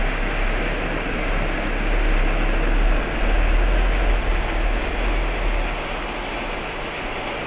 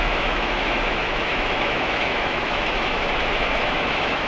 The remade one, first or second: second